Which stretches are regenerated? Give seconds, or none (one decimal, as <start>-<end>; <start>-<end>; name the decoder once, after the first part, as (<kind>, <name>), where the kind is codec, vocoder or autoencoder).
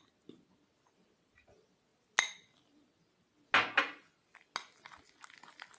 none